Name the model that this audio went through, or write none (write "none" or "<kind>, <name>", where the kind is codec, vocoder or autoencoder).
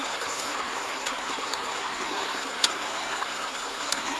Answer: codec, SNAC